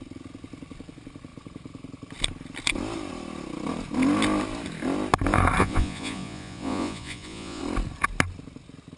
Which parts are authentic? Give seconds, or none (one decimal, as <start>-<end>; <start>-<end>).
0.0-5.6; 7.6-9.0